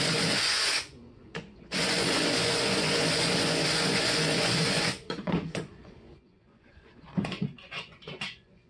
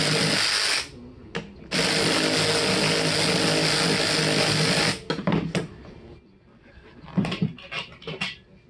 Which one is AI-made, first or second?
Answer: first